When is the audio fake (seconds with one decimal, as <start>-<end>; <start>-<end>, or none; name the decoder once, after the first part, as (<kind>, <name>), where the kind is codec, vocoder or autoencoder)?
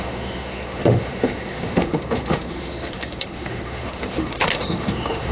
0.0-5.3 (autoencoder, DAC-VAE)